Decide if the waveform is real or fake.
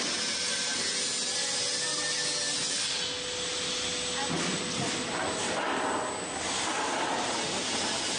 real